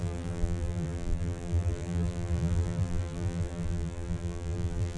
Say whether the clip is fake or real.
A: fake